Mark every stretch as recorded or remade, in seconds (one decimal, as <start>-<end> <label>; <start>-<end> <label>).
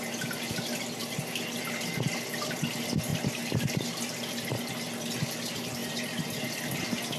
0.0-1.0 recorded; 1.0-2.5 remade; 2.5-5.8 recorded; 5.8-6.8 remade; 6.8-7.2 recorded